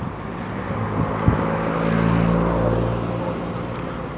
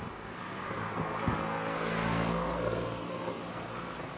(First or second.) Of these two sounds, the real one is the first